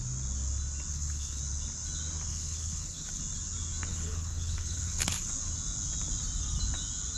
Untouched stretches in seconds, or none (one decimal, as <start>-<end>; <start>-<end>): 0.0-0.9; 1.4-2.3; 3.2-3.9; 5.3-7.2